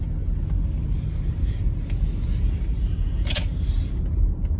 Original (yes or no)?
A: yes